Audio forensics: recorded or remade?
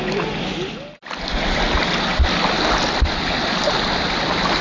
recorded